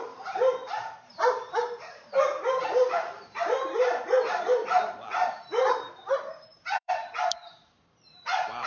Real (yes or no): no